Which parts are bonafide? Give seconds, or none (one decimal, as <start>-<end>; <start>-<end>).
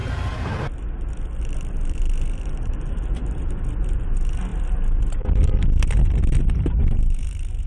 0.0-7.7